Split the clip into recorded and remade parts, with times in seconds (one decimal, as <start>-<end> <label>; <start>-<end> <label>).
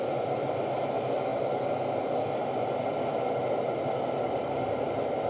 0.0-5.3 recorded